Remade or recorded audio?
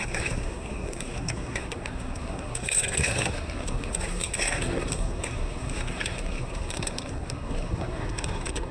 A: remade